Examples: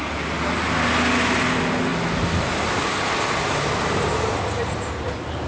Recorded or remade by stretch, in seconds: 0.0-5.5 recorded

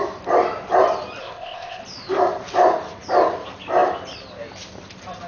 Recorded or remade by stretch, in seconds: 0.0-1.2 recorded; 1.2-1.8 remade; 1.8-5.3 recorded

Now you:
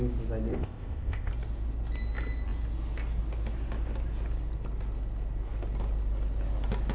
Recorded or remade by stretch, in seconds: 0.0-0.5 recorded; 0.5-1.3 remade; 1.3-6.9 recorded

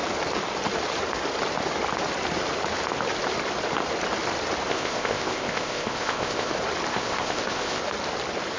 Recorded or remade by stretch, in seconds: 0.0-4.7 recorded; 4.7-6.5 remade; 6.5-6.9 recorded; 6.9-7.8 remade; 7.8-8.6 recorded

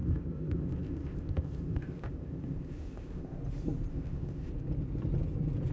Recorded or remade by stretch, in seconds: 0.0-3.4 remade; 3.4-3.9 recorded; 3.9-4.5 remade; 4.5-5.7 recorded

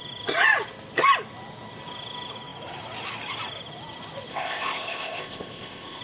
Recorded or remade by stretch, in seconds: 0.0-4.3 recorded; 4.3-6.0 remade

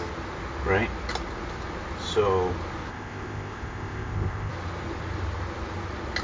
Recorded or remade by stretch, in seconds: 0.0-2.9 recorded; 2.9-4.5 remade; 4.5-6.2 recorded

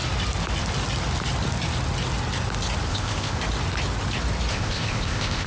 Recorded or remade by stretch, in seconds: 0.0-2.9 recorded; 2.9-3.4 remade; 3.4-4.5 recorded; 4.5-5.5 remade